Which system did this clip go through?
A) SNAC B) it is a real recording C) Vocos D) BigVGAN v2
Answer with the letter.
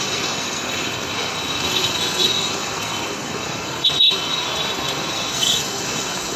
A